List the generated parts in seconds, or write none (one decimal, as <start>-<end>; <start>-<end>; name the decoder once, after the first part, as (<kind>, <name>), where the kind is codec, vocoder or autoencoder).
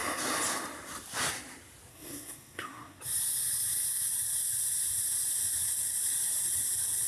1.9-3.0 (codec, SNAC)